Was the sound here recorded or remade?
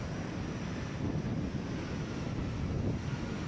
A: recorded